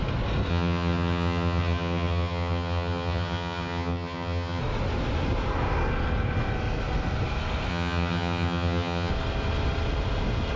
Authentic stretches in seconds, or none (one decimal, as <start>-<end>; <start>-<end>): 0.0-0.5; 4.6-7.7; 9.1-10.6